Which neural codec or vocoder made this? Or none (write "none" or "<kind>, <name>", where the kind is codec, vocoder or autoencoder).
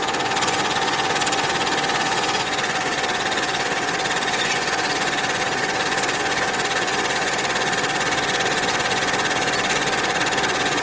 vocoder, Vocos